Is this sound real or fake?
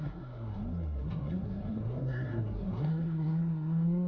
fake